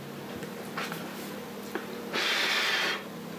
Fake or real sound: real